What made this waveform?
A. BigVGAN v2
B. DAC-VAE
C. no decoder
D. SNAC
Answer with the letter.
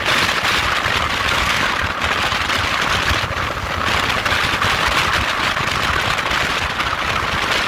C